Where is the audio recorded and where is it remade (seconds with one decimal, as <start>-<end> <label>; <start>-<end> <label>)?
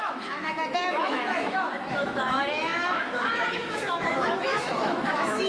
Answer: 0.0-5.5 remade